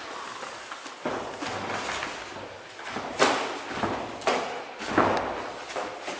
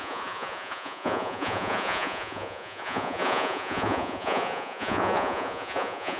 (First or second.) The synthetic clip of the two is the second